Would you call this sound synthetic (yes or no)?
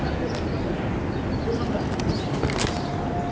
no